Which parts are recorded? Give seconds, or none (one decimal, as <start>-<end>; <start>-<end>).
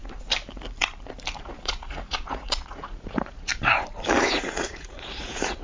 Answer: 0.0-1.4; 3.5-4.3